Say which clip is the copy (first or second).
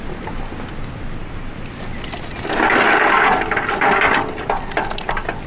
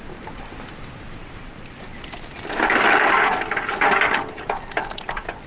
second